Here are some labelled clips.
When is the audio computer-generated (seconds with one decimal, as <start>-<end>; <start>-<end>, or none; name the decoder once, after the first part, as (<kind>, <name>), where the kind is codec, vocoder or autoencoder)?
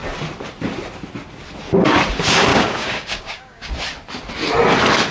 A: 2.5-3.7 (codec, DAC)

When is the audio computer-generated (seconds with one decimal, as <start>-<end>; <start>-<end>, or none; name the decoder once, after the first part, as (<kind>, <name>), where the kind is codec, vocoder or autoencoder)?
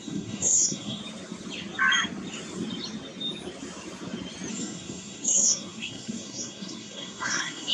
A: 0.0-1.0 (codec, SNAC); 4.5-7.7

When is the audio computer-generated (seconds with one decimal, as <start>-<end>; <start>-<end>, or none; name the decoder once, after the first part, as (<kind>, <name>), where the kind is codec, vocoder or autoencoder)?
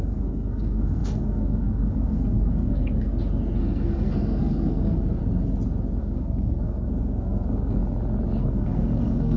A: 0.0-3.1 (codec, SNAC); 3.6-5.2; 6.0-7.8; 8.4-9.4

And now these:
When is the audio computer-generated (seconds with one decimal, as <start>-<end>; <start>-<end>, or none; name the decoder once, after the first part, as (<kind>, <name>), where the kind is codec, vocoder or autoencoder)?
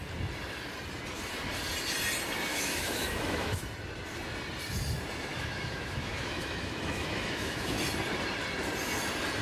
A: 2.5-3.6 (autoencoder, DAC-VAE); 5.3-7.8